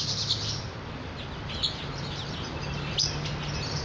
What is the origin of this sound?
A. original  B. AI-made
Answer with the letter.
A